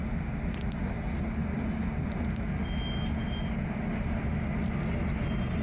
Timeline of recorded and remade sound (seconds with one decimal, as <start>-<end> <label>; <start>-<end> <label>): 0.0-5.6 recorded